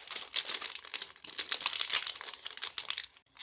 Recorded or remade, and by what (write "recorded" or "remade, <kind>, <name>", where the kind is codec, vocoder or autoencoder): recorded